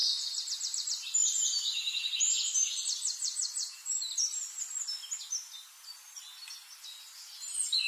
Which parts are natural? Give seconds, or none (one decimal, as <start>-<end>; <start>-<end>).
4.6-7.9